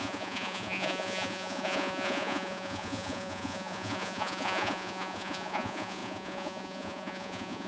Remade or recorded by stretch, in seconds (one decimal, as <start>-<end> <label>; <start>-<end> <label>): 0.0-7.7 remade